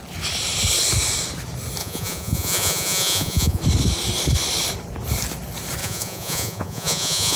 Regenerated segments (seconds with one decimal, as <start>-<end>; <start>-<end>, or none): 1.8-3.6; 5.8-7.4